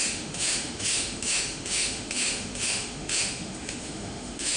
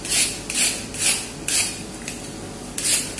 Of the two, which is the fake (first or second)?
first